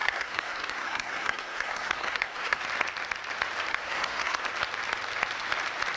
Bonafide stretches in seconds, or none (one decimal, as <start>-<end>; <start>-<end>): 2.6-3.7; 4.4-6.0